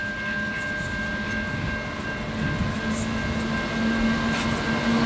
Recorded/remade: recorded